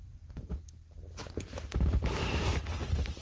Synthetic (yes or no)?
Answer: no